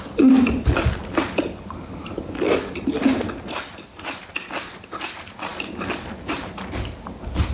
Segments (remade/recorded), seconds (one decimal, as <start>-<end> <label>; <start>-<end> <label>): 0.0-7.5 recorded